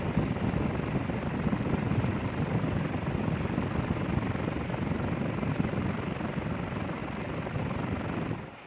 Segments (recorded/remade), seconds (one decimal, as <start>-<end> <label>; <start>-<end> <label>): 0.0-8.7 recorded